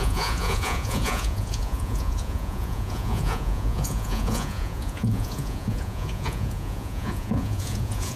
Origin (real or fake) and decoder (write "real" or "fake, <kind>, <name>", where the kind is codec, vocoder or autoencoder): fake, vocoder, Vocos